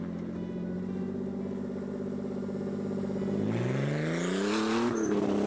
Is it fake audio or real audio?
real